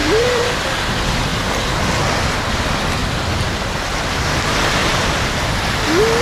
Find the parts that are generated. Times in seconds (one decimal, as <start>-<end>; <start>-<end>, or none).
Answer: 0.0-0.6; 3.0-3.8; 4.8-5.3